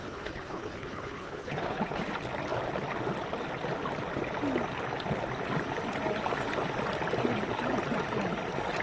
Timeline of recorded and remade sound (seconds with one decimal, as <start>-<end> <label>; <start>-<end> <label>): 0.0-2.0 remade; 2.0-8.8 recorded

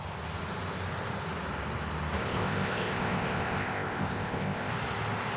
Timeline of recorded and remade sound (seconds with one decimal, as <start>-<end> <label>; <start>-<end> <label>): 0.0-2.2 recorded; 2.2-4.7 remade; 4.7-5.4 recorded

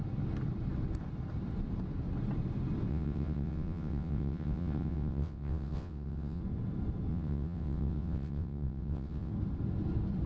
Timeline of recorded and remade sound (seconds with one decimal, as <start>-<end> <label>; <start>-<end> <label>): 0.0-2.9 recorded; 2.9-6.4 remade; 6.4-7.1 recorded; 7.1-9.3 remade; 9.3-10.3 recorded

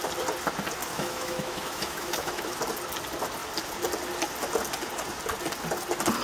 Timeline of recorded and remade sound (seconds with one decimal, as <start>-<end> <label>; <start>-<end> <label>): 0.0-0.8 recorded; 0.8-2.6 remade; 2.6-6.2 recorded